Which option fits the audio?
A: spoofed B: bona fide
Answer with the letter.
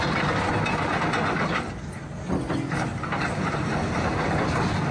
B